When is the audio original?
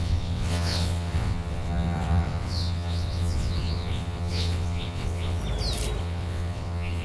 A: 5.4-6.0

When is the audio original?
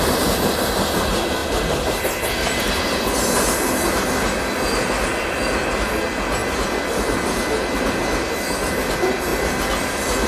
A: 0.0-10.3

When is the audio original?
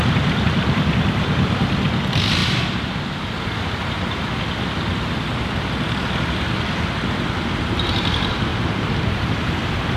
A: 0.0-8.5; 9.6-10.0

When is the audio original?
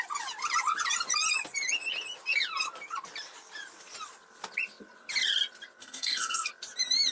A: 0.0-5.8; 6.5-7.1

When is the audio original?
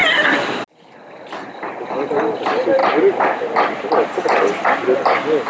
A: 0.0-5.5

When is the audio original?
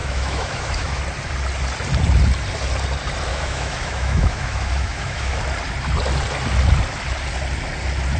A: 1.0-3.3; 5.4-8.2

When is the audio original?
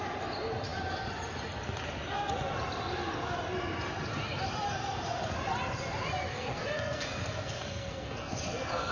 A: 0.0-6.3